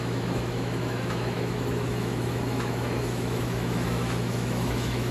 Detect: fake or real fake